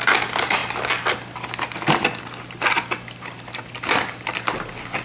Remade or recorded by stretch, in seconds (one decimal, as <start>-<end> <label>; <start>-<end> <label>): 0.0-5.0 recorded